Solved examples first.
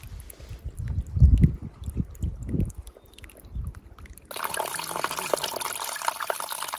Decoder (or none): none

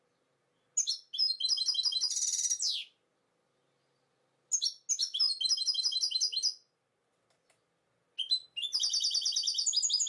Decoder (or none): none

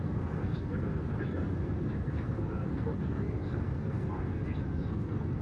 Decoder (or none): codec, SNAC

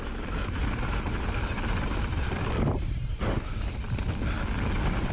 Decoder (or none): none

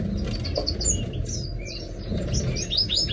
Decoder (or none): none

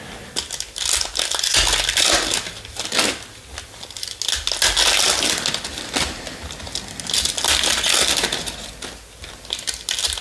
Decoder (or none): none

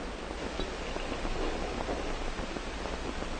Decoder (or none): none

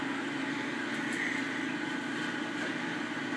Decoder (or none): none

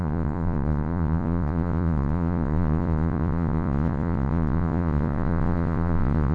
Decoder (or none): vocoder, Vocos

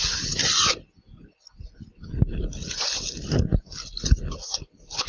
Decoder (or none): none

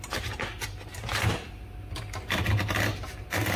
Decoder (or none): none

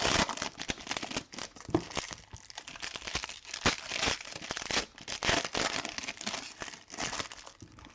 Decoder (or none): none